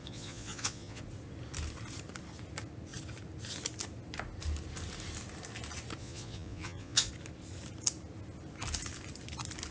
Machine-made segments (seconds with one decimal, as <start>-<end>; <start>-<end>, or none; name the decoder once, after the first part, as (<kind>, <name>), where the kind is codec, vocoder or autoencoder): 0.0-1.0 (vocoder, Vocos); 6.0-7.1

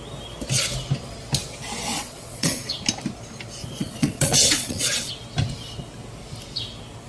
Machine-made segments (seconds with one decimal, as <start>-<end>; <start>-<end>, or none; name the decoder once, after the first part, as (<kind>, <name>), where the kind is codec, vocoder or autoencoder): 1.9-2.8 (vocoder, Vocos); 3.6-5.1

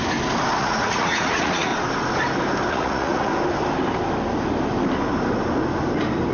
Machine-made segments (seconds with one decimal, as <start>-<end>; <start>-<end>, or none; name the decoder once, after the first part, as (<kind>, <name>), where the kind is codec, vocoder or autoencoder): 0.6-1.7 (vocoder, Vocos); 2.7-3.3